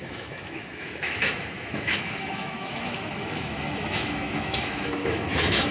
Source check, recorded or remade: remade